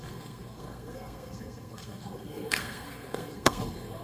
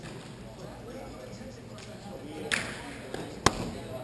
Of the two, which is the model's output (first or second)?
first